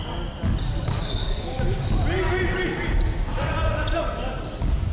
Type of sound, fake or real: real